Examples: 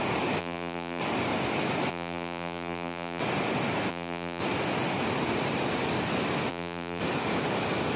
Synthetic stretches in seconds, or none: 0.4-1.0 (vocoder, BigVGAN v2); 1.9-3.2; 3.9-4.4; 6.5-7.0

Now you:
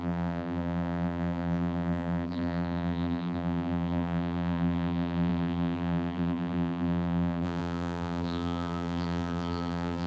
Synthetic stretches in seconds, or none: 0.0-10.1 (vocoder, BigVGAN v2)

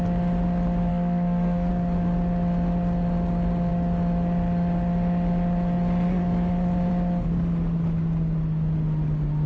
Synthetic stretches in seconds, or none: 0.9-1.7 (codec, SNAC)

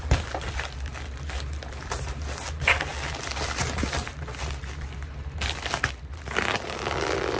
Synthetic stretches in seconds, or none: none

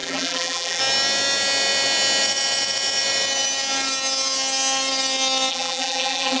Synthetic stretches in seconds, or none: 0.0-0.8 (vocoder, BigVGAN v2); 5.5-6.4

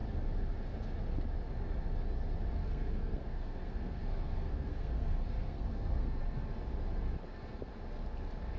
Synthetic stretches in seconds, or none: 2.6-6.2 (codec, SNAC)

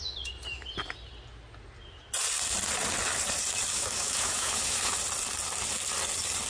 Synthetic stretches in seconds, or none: 3.7-4.9 (autoencoder, DAC-VAE)

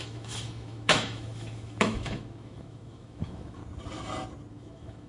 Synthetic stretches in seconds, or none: 0.0-3.6 (autoencoder, DAC-VAE); 4.5-5.1